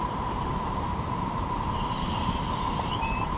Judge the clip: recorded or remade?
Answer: remade